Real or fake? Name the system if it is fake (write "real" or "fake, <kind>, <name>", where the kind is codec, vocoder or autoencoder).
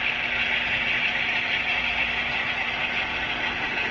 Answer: real